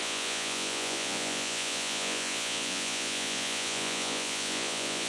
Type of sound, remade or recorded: remade